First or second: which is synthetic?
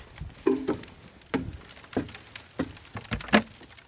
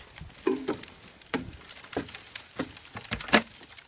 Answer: second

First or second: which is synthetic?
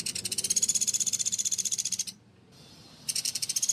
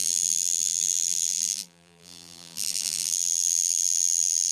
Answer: second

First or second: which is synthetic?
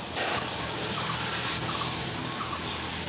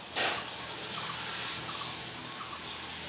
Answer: first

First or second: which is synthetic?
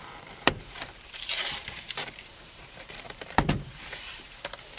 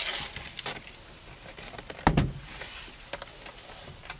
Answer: first